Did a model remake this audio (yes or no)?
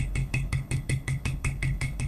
yes